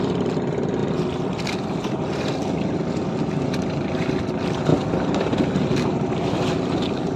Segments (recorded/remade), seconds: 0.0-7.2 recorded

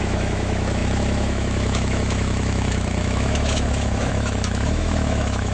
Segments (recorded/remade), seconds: 0.0-5.5 remade

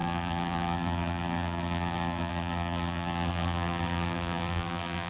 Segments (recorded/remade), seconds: 0.0-5.1 remade

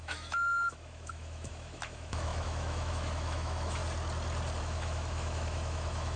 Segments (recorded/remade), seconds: 0.0-3.8 remade; 3.8-4.6 recorded; 4.6-6.2 remade